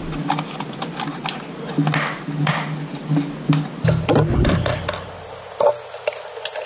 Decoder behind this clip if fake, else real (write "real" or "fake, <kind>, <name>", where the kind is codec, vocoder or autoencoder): real